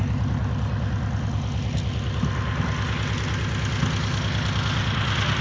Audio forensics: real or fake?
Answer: real